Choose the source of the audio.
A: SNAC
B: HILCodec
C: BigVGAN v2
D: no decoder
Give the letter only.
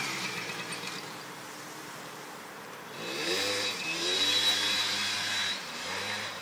C